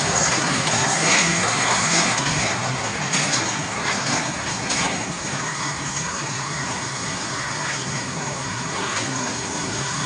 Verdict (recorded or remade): remade